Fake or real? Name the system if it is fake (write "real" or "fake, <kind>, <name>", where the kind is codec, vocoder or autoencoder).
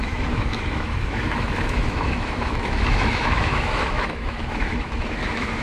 fake, autoencoder, DAC-VAE